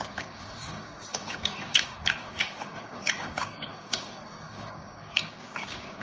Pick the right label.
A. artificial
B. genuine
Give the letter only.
A